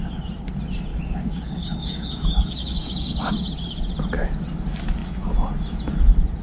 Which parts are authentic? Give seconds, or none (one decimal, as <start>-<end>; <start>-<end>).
0.0-0.9; 3.3-6.4

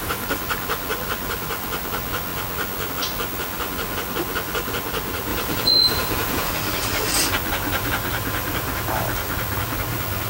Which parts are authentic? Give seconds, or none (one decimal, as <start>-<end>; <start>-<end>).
0.0-5.3; 6.5-10.3